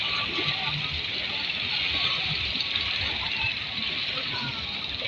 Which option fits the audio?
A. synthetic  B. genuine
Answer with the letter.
B